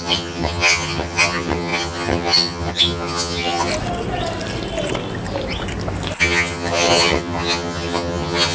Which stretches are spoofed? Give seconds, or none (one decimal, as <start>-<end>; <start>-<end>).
0.0-3.7; 6.2-8.5